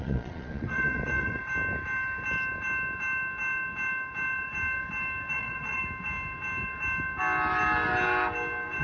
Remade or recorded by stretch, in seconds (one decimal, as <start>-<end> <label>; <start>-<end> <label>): 0.0-1.4 remade; 1.4-5.3 recorded; 5.3-5.8 remade; 5.8-8.8 recorded